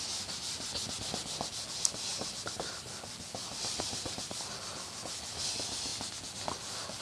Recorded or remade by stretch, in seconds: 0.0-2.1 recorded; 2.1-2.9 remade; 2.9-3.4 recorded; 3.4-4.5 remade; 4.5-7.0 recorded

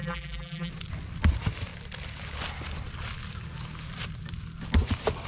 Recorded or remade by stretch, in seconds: 0.0-0.7 remade; 0.7-5.3 recorded